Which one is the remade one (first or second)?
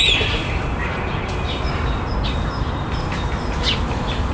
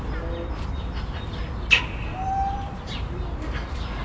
first